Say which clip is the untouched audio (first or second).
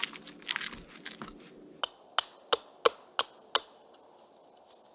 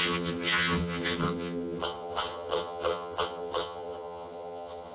first